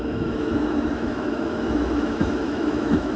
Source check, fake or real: fake